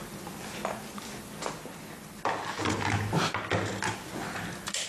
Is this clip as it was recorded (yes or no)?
yes